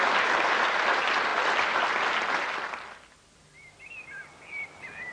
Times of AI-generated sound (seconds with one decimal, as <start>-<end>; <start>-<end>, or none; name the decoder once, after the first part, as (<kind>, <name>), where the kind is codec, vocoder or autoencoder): none